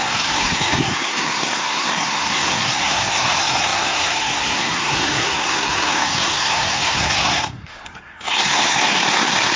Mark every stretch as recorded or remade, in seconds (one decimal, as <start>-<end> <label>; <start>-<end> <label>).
0.0-9.6 remade